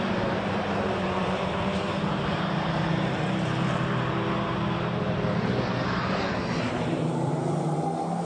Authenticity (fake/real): fake